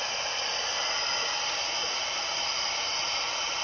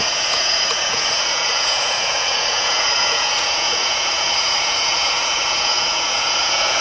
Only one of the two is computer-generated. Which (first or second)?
second